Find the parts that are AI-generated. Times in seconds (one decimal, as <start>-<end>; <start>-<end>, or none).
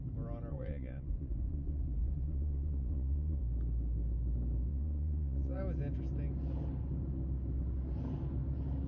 0.5-3.4; 4.7-5.6